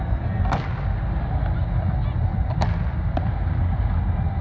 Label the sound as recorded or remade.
recorded